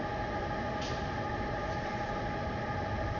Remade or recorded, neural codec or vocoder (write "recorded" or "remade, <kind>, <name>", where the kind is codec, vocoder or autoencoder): recorded